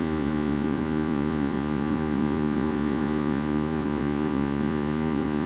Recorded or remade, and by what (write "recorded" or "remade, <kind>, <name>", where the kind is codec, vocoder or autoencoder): remade, vocoder, Vocos